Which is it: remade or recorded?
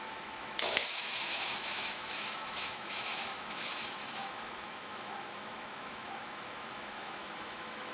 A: remade